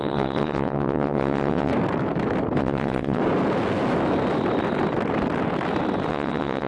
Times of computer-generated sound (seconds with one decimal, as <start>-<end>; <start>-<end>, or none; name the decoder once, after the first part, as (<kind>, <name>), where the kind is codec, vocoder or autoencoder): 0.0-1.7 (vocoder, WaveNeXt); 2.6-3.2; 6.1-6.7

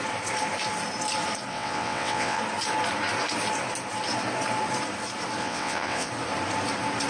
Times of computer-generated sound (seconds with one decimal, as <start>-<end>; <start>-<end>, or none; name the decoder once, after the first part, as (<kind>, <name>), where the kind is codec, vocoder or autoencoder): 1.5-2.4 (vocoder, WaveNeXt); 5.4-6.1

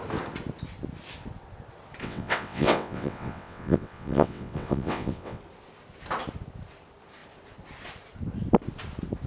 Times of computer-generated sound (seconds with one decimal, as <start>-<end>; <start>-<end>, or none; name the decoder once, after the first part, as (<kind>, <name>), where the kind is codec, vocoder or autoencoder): 2.0-5.4 (vocoder, WaveNeXt)

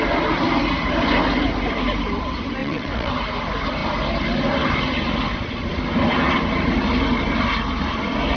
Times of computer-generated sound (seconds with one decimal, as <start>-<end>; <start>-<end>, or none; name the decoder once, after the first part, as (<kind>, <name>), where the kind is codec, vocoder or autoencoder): 2.6-3.1 (vocoder, WaveNeXt)

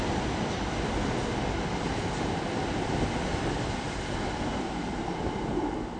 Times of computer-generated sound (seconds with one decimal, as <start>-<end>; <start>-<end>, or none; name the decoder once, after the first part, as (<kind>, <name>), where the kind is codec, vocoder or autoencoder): none

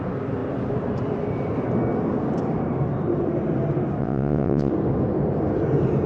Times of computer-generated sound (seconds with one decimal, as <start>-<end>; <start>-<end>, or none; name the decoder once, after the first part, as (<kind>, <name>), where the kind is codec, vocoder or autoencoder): 4.0-4.7 (vocoder, WaveNeXt)